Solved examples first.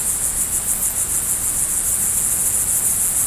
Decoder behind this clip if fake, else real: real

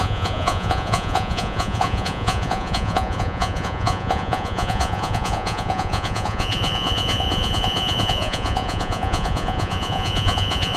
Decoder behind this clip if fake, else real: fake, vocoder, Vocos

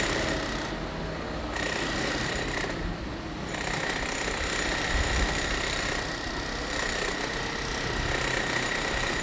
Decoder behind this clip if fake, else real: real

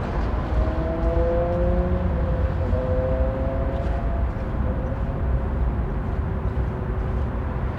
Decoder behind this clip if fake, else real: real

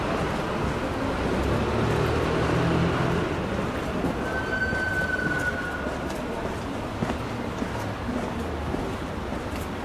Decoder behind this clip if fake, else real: real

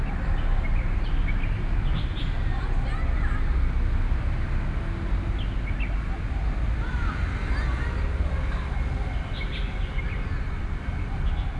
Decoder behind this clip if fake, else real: real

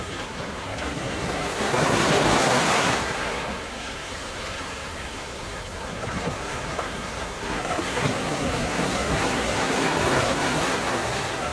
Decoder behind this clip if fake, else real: fake, codec, SNAC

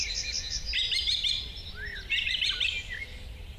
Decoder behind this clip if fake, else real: real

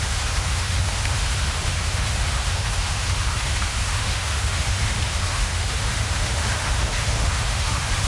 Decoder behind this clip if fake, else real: fake, autoencoder, DAC-VAE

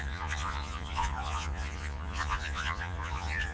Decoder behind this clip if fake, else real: fake, vocoder, Vocos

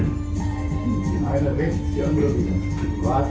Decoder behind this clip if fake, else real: real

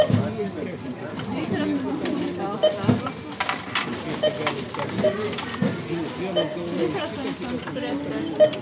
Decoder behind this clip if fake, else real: real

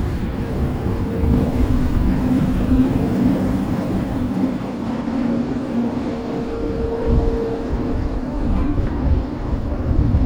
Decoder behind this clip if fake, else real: fake, codec, DAC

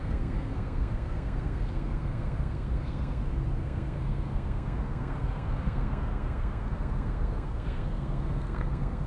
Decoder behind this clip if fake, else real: fake, codec, SNAC